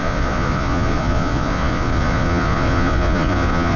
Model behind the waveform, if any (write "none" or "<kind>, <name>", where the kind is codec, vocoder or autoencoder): vocoder, Vocos